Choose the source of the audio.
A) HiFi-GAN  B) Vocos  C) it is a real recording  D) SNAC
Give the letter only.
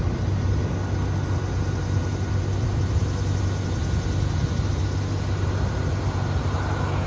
C